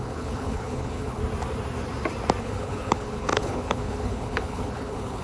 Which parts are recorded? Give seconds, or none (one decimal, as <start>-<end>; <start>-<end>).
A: 1.2-2.4